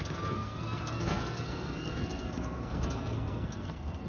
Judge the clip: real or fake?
fake